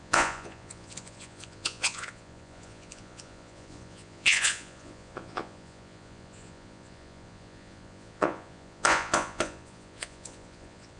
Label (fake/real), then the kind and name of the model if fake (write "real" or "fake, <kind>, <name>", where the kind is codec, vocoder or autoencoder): fake, vocoder, Vocos